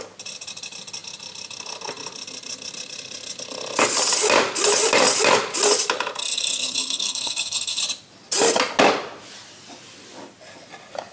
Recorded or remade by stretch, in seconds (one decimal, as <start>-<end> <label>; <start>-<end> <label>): 0.0-6.2 recorded; 6.2-7.8 remade; 7.8-11.1 recorded